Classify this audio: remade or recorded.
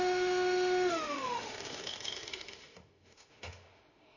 remade